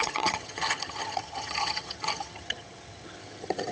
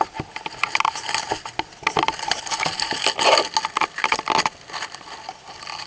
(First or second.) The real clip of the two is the second